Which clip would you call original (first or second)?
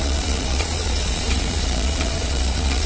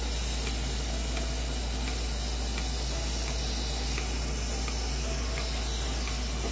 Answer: second